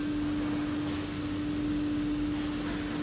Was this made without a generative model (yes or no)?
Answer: yes